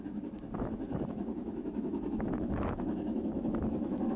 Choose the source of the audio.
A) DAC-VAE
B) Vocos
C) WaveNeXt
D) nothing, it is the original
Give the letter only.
A